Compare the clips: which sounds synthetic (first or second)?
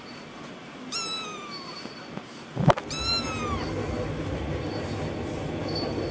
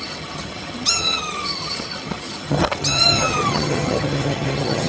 second